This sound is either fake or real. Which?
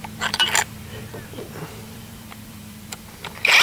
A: fake